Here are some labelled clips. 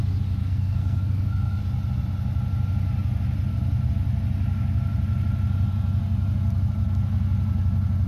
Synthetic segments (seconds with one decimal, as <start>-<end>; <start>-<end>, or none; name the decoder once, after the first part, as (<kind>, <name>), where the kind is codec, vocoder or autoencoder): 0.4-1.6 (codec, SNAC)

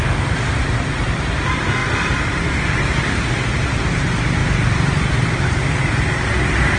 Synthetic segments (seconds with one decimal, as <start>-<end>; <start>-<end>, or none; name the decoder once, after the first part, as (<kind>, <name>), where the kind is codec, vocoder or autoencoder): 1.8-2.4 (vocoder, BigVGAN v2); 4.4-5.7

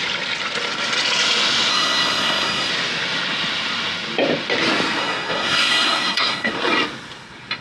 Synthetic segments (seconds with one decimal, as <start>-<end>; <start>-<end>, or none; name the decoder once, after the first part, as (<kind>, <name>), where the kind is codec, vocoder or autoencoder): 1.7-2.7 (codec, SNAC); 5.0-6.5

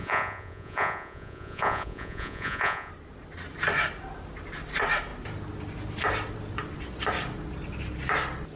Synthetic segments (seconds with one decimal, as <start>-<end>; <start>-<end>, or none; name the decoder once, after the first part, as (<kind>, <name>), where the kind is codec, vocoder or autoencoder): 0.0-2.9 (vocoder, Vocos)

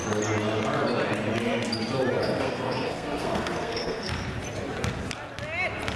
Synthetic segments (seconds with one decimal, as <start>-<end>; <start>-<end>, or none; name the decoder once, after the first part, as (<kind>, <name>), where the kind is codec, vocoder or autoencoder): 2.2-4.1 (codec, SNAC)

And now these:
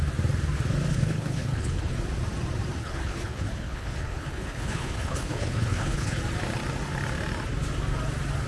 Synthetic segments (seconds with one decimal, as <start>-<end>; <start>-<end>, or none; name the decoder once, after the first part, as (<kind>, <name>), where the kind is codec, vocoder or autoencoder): 0.9-1.9 (codec, HILCodec); 2.8-6.2